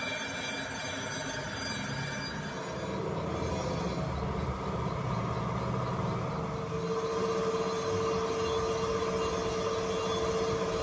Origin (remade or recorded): recorded